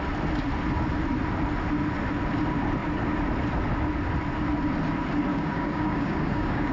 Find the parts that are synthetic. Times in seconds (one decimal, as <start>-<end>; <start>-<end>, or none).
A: 5.3-6.7

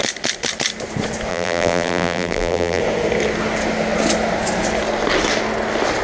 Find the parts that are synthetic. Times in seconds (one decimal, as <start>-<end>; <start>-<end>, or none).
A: 1.3-2.8

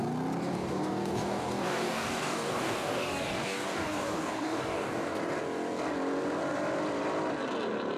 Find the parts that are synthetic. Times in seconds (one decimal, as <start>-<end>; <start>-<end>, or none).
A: 0.4-5.2

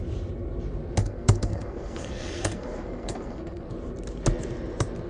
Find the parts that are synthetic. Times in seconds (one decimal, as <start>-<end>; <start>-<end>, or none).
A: 1.0-3.7